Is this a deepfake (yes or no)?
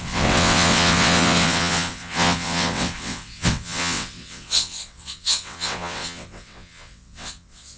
yes